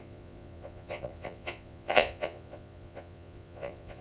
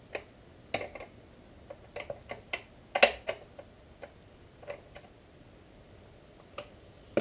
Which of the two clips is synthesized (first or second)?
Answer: first